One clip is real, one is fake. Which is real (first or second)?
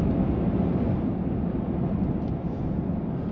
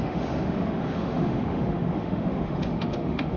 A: first